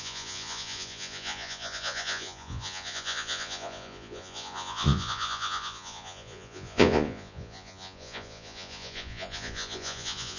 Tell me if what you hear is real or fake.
fake